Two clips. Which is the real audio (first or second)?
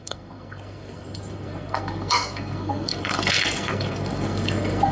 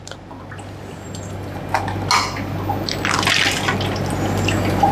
second